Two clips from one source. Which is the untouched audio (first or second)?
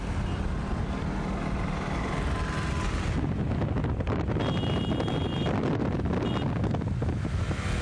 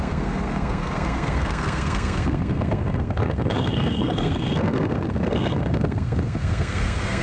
first